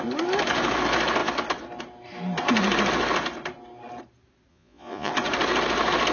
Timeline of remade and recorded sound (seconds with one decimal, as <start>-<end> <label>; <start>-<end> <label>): 0.0-4.5 recorded; 4.5-5.1 remade; 5.1-6.1 recorded